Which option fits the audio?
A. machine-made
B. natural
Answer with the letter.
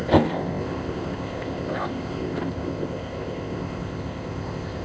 A